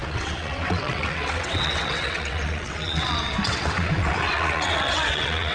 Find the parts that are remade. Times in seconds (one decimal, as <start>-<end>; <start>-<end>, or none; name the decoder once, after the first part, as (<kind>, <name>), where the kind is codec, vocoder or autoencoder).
0.0-5.5 (vocoder, WaveNeXt)